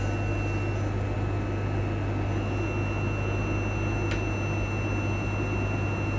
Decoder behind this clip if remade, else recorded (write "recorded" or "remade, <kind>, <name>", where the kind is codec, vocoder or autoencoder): recorded